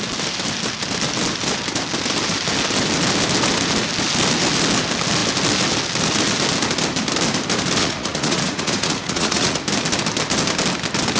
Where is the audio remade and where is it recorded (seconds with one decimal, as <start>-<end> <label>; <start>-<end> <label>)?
0.0-7.8 recorded; 7.8-9.6 remade; 9.6-11.2 recorded